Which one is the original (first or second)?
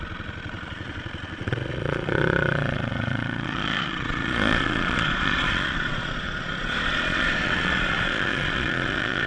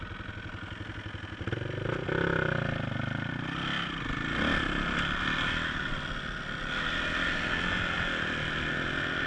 second